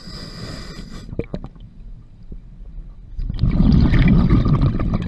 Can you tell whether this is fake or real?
real